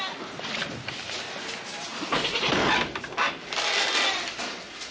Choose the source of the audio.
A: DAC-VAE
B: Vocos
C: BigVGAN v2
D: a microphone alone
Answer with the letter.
D